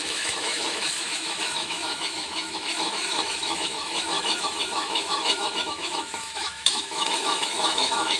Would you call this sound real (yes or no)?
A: no